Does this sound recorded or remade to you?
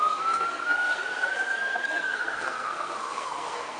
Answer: remade